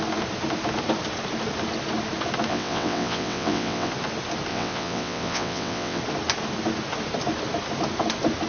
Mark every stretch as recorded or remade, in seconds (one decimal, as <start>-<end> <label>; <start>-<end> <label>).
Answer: 0.0-2.5 recorded; 2.5-3.9 remade; 3.9-4.5 recorded; 4.5-6.0 remade; 6.0-8.5 recorded